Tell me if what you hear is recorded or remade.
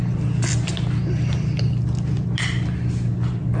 recorded